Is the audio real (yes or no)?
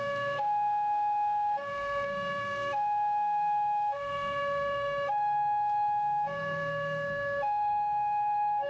no